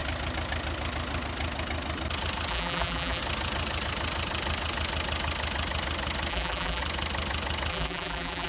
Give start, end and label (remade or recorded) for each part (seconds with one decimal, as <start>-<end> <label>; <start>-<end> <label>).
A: 0.0-2.5 recorded; 2.5-3.2 remade; 3.2-6.3 recorded; 6.3-6.8 remade; 6.8-7.7 recorded; 7.7-8.5 remade

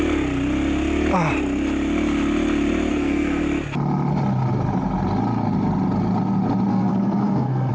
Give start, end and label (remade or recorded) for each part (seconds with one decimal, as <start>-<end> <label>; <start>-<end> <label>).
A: 0.0-2.9 recorded; 2.9-3.4 remade; 3.4-6.7 recorded; 6.7-7.7 remade